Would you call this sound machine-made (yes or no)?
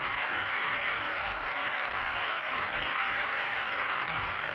yes